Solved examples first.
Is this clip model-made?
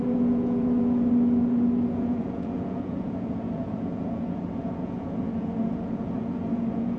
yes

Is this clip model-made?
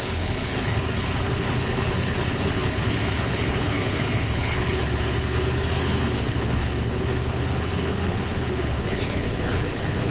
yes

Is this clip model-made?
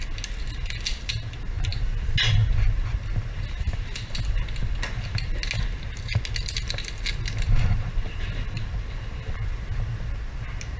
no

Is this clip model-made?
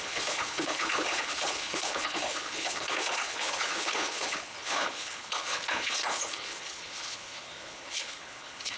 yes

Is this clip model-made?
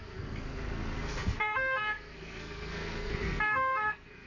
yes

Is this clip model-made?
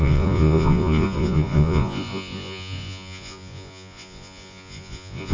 yes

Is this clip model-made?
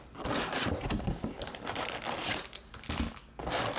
no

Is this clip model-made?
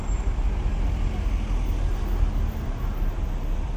no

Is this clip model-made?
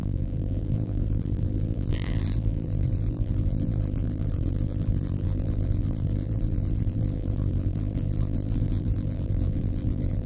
yes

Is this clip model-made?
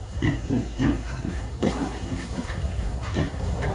yes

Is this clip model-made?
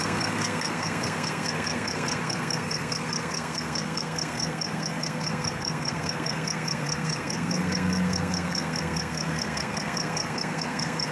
yes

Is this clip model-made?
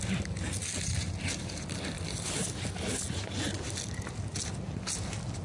no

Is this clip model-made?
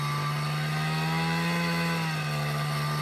no